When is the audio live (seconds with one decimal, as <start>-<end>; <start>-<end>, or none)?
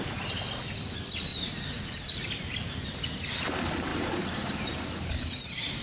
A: 0.0-1.3; 2.3-3.9; 5.1-5.8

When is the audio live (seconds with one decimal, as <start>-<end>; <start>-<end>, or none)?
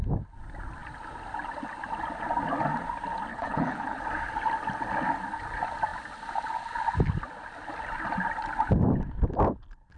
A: 0.0-3.3; 4.0-10.0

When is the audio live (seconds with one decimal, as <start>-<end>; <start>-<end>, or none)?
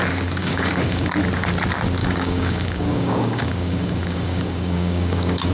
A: 0.0-0.4; 1.1-2.0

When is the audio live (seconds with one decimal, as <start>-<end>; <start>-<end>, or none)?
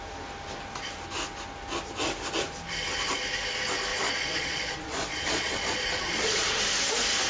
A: 0.0-3.9; 6.6-7.3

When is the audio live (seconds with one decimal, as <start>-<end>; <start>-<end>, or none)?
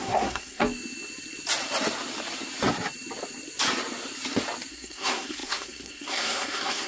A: 0.6-4.7